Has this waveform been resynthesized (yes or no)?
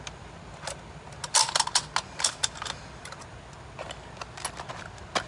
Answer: no